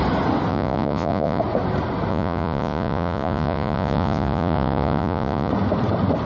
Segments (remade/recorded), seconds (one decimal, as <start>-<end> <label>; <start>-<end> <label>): 0.0-0.5 recorded; 0.5-1.4 remade; 1.4-2.1 recorded; 2.1-5.5 remade; 5.5-6.2 recorded